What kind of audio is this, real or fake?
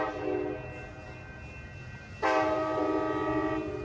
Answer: real